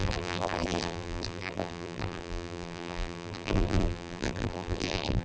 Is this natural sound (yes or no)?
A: no